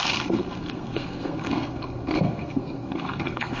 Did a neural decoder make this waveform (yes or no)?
yes